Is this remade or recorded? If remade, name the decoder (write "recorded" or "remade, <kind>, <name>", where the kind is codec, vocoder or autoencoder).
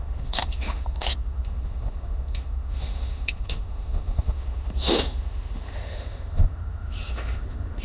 remade, autoencoder, DAC-VAE